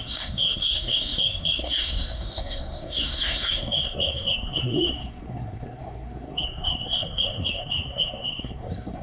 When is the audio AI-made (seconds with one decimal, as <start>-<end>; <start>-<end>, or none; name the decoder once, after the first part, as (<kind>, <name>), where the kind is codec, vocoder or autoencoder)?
0.0-9.0 (codec, SNAC)